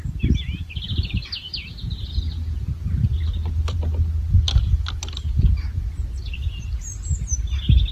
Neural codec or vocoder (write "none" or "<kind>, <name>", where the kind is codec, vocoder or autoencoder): none